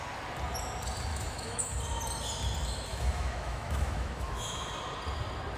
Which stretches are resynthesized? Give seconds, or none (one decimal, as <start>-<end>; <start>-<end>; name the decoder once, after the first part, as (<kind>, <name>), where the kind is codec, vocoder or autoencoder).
1.1-1.7 (autoencoder, DAC-VAE); 2.9-4.7